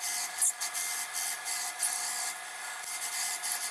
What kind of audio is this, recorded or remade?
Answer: recorded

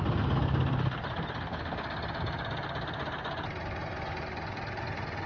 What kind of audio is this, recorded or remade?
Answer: recorded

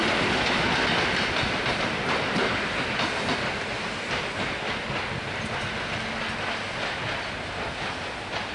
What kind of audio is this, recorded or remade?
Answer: recorded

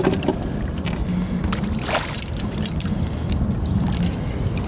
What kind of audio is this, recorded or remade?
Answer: recorded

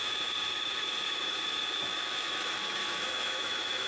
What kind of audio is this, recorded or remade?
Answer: remade